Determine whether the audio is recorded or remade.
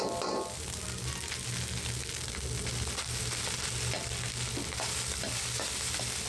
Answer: recorded